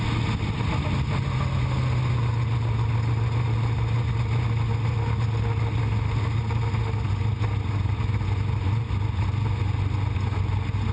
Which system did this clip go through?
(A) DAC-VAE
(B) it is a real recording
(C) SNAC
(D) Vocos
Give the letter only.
B